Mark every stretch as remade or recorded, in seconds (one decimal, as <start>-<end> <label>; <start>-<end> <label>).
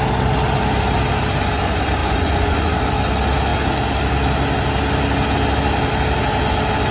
0.0-2.0 recorded; 2.0-2.8 remade; 2.8-6.9 recorded